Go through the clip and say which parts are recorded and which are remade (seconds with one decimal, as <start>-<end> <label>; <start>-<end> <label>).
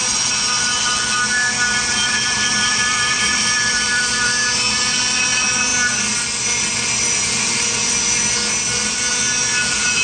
0.0-1.9 recorded; 1.9-4.3 remade; 4.3-10.0 recorded